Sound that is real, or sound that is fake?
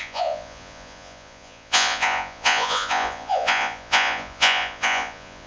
fake